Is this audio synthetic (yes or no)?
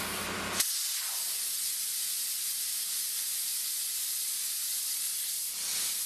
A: no